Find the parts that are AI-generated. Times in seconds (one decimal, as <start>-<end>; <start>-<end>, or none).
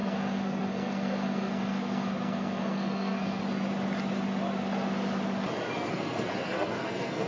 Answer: 0.0-3.4; 5.9-7.3